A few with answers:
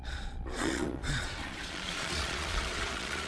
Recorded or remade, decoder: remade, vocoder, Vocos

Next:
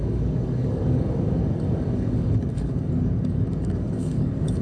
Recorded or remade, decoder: remade, codec, DAC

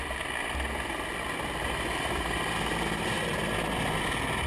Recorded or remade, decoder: recorded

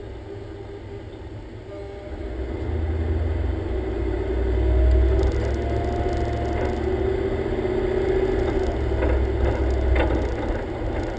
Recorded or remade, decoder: recorded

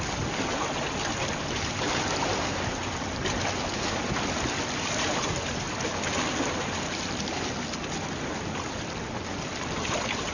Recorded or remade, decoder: recorded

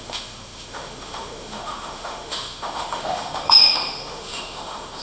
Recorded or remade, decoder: remade, autoencoder, DAC-VAE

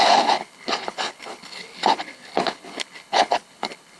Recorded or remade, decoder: remade, codec, HILCodec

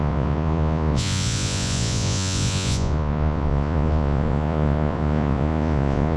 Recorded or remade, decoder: remade, vocoder, Vocos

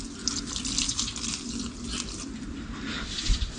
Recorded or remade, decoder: recorded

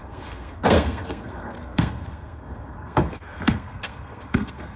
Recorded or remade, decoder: remade, codec, SNAC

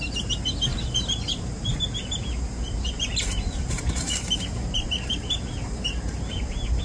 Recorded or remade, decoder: remade, vocoder, BigVGAN v2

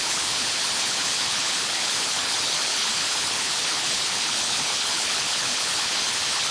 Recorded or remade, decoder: remade, codec, HILCodec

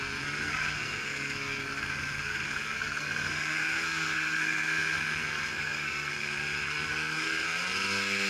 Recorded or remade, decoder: remade, codec, SNAC